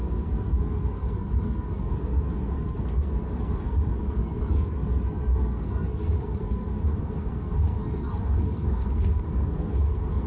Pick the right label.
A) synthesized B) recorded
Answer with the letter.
A